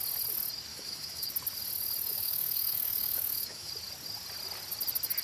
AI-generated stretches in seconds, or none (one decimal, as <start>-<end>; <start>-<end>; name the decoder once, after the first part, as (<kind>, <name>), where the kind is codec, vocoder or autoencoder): 0.7-1.3 (autoencoder, DAC-VAE); 2.1-3.7